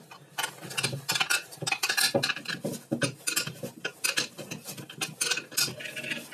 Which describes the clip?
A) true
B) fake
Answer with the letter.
A